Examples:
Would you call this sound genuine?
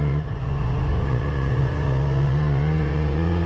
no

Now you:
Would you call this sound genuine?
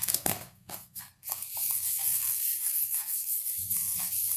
no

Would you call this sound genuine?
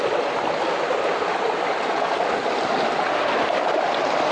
yes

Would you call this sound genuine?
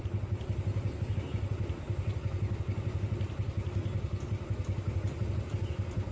yes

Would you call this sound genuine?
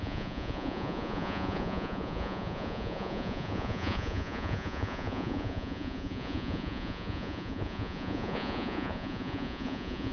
no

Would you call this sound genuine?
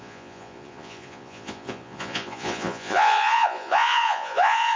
no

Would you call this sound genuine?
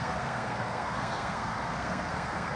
no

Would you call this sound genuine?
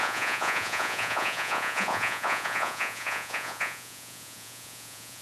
no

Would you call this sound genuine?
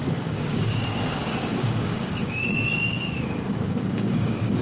no